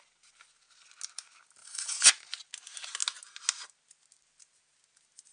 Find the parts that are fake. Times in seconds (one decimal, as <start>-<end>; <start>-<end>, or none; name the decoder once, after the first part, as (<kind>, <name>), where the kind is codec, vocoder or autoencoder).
1.6-2.1 (vocoder, Vocos)